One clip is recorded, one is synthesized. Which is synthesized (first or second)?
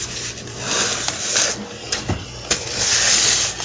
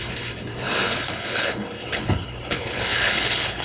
second